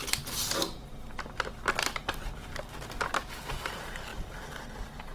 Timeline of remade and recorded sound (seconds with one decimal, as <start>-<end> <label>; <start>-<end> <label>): 0.0-2.0 recorded; 2.0-2.4 remade; 2.4-3.3 recorded; 3.3-5.1 remade